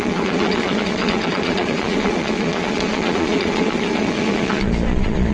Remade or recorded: remade